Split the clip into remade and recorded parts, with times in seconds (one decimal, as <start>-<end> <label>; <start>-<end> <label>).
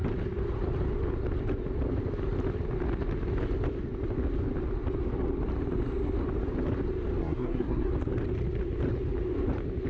0.0-7.2 recorded; 7.2-7.9 remade; 7.9-9.9 recorded